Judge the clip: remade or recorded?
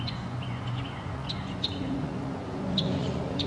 remade